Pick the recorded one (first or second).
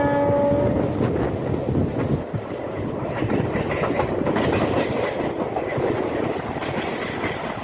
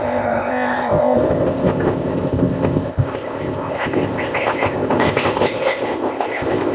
first